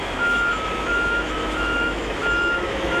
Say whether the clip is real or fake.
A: fake